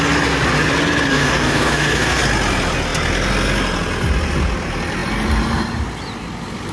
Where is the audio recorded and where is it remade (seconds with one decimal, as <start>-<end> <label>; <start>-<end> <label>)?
0.0-1.1 recorded; 1.1-2.2 remade; 2.2-6.7 recorded